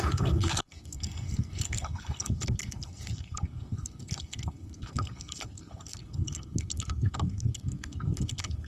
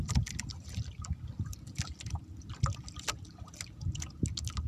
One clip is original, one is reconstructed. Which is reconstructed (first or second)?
first